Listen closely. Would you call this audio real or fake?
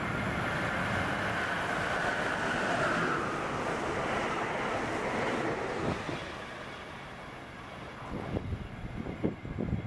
real